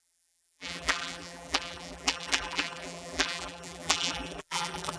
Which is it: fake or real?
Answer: fake